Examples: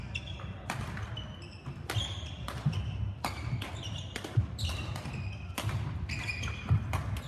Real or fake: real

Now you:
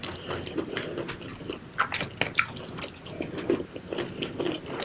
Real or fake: real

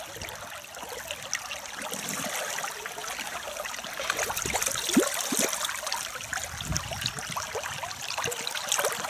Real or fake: real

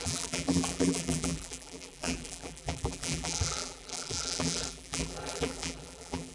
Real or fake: fake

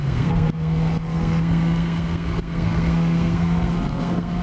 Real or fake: fake